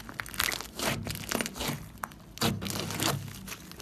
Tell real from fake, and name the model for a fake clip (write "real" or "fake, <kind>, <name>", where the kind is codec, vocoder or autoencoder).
real